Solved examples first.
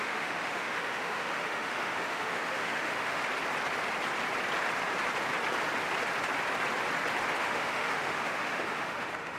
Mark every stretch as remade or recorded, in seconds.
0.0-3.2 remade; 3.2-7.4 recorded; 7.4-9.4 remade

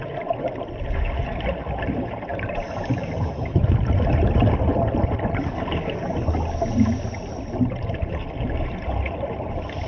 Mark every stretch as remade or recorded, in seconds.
0.0-9.9 recorded

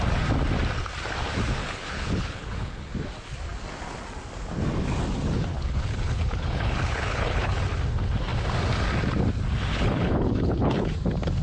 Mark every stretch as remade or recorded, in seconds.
0.0-1.6 recorded; 1.6-2.9 remade; 2.9-5.5 recorded; 5.5-7.6 remade; 7.6-9.7 recorded; 9.7-10.9 remade; 10.9-11.4 recorded